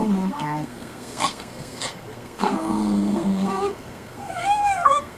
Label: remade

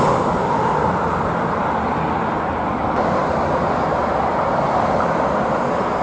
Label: remade